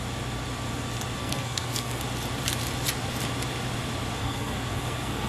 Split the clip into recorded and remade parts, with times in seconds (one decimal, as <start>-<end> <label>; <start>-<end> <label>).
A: 0.0-1.2 recorded; 1.2-2.0 remade; 2.0-4.2 recorded; 4.2-5.3 remade